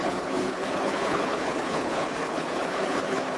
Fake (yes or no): yes